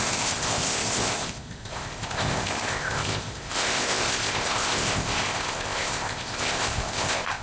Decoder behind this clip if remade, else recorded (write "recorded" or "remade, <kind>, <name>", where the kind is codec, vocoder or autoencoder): remade, codec, ZipCodec